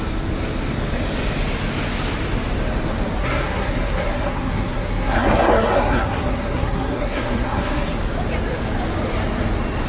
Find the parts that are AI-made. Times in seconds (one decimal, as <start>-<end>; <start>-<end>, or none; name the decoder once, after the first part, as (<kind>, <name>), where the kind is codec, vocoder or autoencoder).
3.2-8.0 (codec, SNAC)